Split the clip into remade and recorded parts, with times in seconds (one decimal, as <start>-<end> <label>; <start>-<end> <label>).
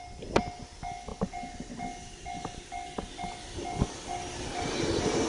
0.0-5.3 recorded